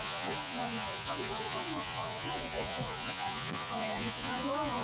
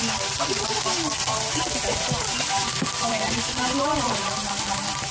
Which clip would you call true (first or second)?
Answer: second